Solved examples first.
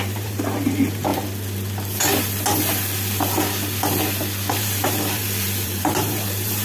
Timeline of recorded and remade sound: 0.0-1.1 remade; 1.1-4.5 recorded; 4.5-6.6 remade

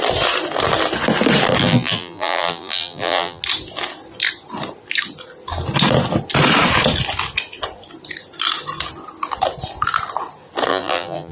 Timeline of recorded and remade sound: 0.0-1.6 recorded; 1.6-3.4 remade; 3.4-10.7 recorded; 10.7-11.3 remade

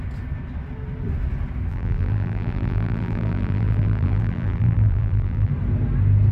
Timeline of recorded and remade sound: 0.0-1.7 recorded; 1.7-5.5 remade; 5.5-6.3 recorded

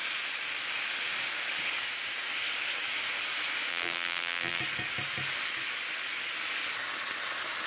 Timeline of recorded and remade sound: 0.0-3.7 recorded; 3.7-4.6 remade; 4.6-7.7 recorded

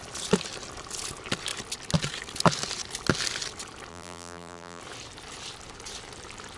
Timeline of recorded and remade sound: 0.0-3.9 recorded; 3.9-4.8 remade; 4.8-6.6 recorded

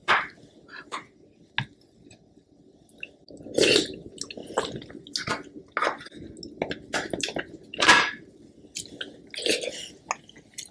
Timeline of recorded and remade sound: 0.0-10.7 recorded

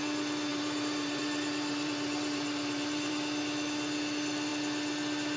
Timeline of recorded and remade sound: 0.0-0.5 recorded; 0.5-3.1 remade; 3.1-5.4 recorded